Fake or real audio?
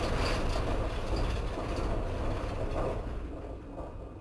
real